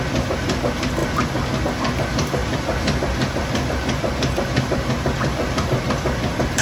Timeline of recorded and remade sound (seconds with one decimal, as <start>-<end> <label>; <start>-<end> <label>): 0.0-6.6 recorded